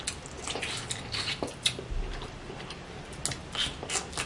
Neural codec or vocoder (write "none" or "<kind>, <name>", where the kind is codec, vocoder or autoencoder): none